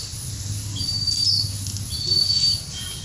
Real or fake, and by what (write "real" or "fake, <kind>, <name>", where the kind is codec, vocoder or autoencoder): real